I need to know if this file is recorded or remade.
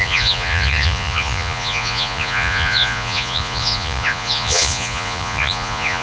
remade